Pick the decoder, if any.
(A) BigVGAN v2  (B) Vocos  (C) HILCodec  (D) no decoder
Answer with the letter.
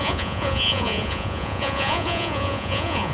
B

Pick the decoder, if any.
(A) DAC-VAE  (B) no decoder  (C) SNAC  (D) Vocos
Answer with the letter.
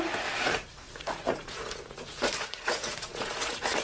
D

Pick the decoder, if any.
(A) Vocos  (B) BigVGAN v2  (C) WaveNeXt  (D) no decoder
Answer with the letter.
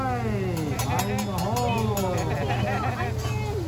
D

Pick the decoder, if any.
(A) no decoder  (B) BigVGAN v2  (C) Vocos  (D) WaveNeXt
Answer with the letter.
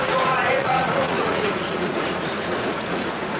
C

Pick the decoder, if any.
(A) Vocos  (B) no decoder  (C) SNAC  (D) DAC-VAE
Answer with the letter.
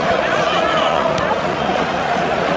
A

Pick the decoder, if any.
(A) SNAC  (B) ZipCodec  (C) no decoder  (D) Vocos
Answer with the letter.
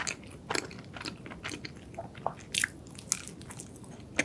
C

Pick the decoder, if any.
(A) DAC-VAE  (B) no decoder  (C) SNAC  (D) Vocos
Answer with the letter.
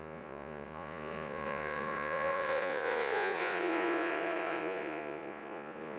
D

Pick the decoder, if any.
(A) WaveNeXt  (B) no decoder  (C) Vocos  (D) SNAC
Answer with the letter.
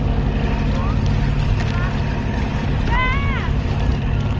B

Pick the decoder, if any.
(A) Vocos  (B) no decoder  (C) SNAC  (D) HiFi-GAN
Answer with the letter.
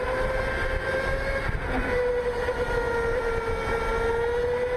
B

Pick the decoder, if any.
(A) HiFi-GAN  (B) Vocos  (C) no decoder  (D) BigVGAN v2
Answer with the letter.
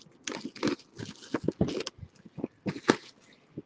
C